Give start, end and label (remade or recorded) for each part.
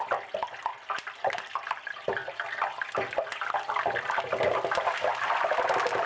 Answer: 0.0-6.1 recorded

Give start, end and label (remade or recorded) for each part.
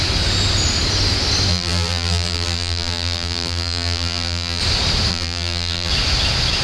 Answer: 0.0-1.5 recorded; 1.5-4.6 remade; 4.6-5.1 recorded; 5.1-5.9 remade; 5.9-6.6 recorded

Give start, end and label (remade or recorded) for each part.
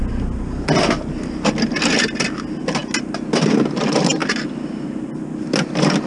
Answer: 0.0-6.1 recorded